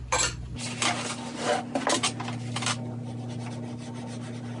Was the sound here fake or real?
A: real